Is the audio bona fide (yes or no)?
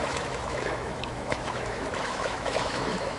no